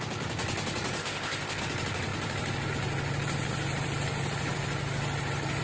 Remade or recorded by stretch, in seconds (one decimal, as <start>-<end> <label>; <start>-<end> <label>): 0.0-1.0 recorded; 1.0-1.6 remade; 1.6-5.6 recorded